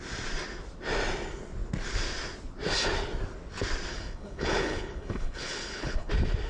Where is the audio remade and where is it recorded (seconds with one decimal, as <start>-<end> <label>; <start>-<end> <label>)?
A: 0.0-3.9 recorded; 3.9-6.1 remade; 6.1-6.5 recorded